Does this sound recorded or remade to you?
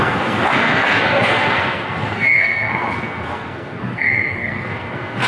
remade